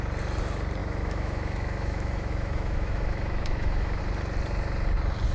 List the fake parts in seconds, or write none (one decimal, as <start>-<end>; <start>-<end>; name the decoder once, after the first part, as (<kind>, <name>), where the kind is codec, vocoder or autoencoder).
0.8-4.0 (autoencoder, DAC-VAE)